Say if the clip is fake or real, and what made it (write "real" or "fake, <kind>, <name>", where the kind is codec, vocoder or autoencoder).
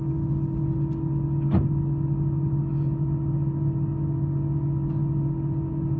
real